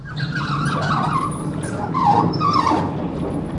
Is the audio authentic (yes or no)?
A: yes